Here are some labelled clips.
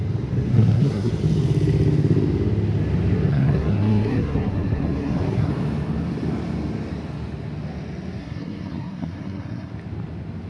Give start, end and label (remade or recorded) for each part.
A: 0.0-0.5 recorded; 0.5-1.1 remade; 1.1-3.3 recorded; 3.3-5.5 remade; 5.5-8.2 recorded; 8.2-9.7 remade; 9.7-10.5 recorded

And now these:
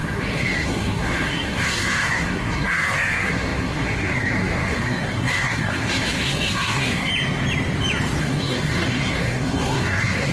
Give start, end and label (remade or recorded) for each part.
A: 0.0-7.1 remade; 7.1-8.2 recorded; 8.2-10.3 remade

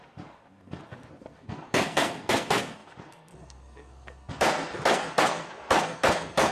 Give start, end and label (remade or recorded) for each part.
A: 0.0-6.5 remade

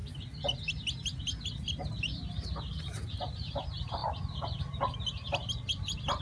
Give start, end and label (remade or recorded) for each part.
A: 0.0-6.2 recorded